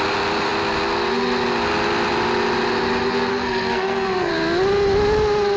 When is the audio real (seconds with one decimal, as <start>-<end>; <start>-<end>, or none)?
0.0-3.3; 4.3-5.6